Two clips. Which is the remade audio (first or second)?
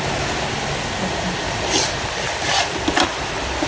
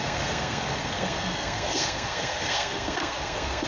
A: second